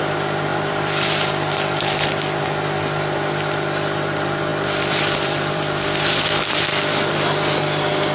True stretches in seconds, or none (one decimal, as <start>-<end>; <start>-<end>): 0.0-0.5; 1.3-4.5; 6.4-8.1